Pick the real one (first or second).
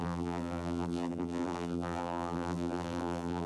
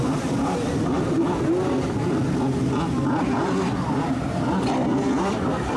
second